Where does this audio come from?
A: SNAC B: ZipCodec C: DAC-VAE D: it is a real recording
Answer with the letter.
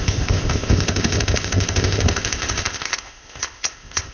B